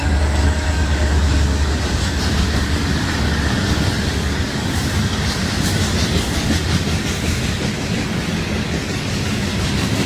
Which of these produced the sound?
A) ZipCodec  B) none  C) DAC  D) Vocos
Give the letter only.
C